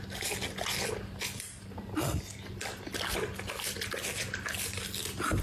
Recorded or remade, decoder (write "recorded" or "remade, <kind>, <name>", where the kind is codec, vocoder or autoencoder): recorded